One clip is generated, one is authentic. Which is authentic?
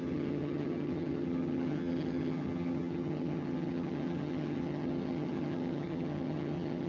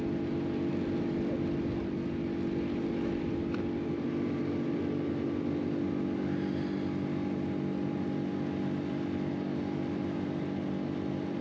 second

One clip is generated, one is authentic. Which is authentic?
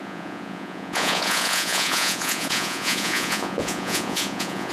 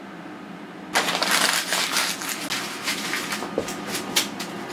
second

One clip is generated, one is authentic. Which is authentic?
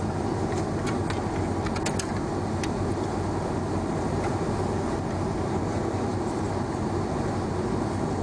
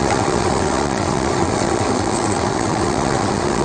first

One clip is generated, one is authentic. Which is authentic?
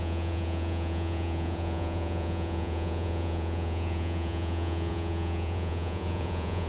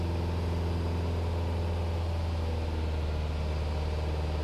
second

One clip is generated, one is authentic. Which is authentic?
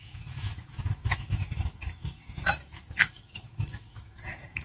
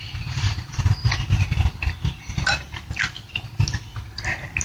second